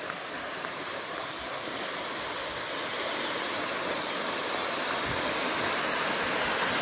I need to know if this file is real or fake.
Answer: fake